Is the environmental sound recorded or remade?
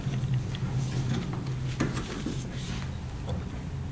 recorded